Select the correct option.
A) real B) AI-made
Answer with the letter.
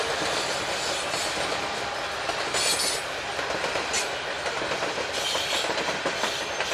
A